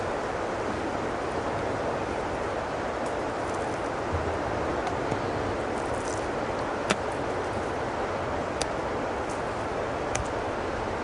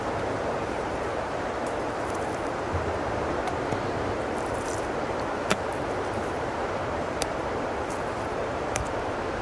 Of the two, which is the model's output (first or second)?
second